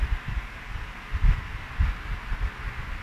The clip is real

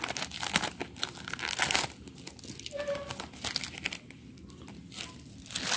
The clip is real